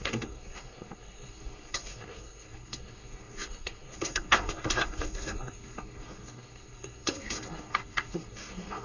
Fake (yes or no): yes